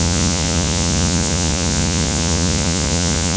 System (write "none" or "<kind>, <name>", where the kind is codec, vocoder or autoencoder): vocoder, Vocos